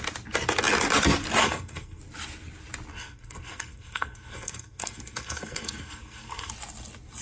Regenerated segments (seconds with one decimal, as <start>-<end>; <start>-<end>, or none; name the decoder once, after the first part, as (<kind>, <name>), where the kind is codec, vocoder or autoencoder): 1.4-2.0 (codec, SNAC); 2.9-6.5